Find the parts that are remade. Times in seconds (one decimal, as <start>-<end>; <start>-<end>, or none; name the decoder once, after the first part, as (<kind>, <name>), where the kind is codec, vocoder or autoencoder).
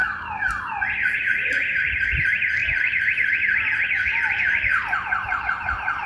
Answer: none